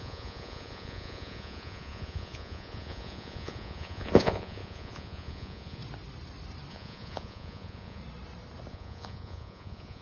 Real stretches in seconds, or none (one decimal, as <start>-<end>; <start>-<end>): 5.8-6.7; 8.0-8.7